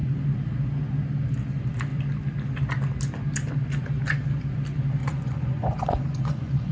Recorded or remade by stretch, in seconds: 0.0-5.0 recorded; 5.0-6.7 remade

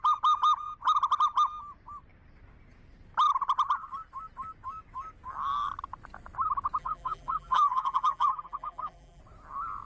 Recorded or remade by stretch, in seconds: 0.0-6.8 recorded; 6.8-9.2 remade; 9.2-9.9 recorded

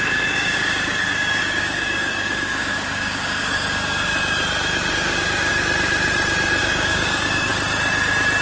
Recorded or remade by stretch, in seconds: 0.0-4.1 remade; 4.1-4.9 recorded; 4.9-5.5 remade; 5.5-6.6 recorded; 6.6-7.5 remade; 7.5-8.4 recorded